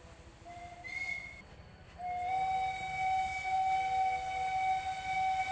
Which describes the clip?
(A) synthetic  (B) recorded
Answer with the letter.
B